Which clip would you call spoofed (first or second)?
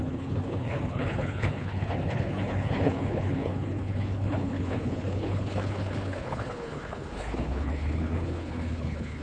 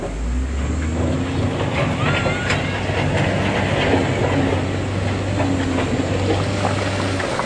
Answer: first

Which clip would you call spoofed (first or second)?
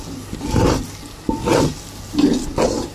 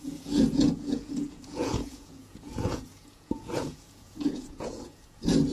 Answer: second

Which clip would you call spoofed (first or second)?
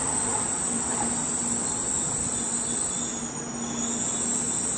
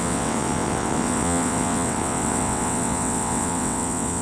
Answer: second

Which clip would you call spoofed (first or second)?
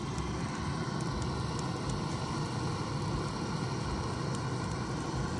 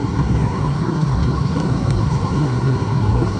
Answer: second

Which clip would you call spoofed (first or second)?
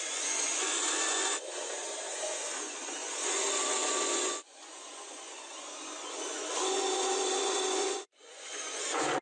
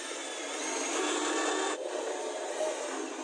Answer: first